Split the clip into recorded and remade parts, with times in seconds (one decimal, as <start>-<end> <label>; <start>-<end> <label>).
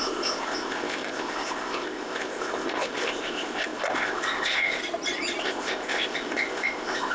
0.0-4.8 remade; 4.8-5.4 recorded; 5.4-7.1 remade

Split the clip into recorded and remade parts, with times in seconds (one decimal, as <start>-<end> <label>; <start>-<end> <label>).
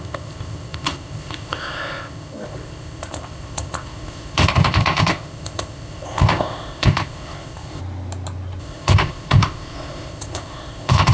0.0-7.8 remade; 7.8-8.6 recorded; 8.6-11.1 remade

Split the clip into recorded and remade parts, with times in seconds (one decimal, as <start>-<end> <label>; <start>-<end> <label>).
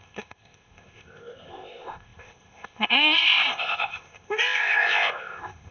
0.0-5.7 remade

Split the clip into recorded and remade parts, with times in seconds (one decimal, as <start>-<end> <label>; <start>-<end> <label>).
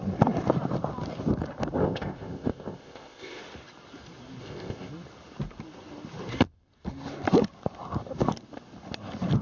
0.0-1.8 recorded; 1.8-3.4 remade; 3.4-4.4 recorded; 4.4-4.9 remade; 4.9-9.4 recorded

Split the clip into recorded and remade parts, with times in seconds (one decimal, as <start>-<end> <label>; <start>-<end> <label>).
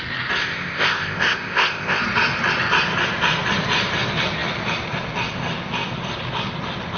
0.0-0.4 recorded; 0.4-2.0 remade; 2.0-7.0 recorded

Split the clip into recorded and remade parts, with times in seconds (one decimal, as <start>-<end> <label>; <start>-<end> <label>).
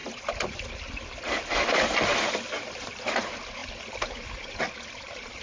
0.0-5.4 recorded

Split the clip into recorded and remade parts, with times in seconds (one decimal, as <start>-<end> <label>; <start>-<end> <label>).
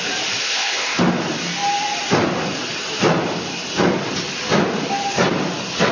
0.0-0.4 recorded; 0.4-1.0 remade; 1.0-5.9 recorded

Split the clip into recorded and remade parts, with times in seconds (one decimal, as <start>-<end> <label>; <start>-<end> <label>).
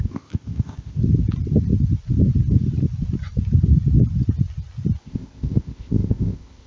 0.0-1.0 remade; 1.0-5.0 recorded; 5.0-6.7 remade